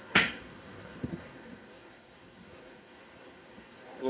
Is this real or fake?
fake